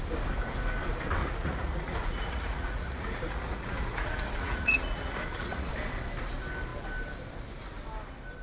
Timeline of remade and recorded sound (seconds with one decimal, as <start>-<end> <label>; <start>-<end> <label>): 0.0-1.2 recorded; 1.2-5.7 remade; 5.7-8.4 recorded